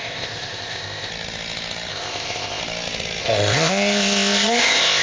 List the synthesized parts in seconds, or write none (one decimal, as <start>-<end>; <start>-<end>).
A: 0.0-1.1; 1.9-2.6; 3.2-5.0